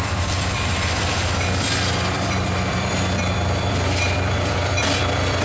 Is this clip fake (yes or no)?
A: yes